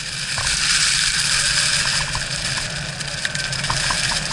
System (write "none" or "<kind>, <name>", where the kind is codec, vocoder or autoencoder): none